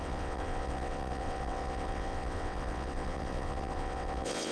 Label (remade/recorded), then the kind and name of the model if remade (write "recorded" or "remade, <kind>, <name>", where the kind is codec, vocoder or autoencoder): remade, vocoder, WaveNeXt